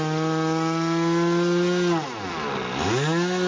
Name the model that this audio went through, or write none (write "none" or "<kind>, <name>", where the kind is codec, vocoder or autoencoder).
none